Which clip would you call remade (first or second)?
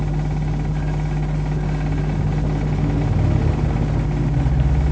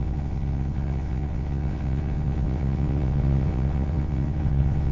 second